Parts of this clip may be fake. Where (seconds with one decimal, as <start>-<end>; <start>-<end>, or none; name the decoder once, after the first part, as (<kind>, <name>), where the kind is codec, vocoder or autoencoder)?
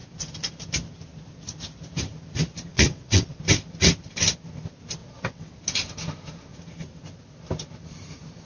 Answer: 2.7-3.4 (vocoder, WaveNeXt); 5.0-5.5